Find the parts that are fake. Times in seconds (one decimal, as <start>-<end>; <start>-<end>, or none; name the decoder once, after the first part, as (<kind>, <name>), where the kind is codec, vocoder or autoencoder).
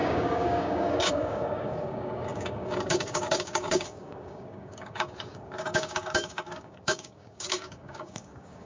0.0-8.7 (codec, DAC)